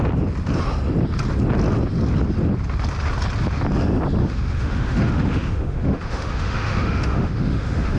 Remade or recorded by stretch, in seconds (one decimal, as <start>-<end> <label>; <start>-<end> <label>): 0.0-4.2 recorded; 4.2-8.0 remade